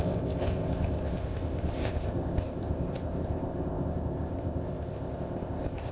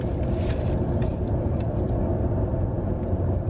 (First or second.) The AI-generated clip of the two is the first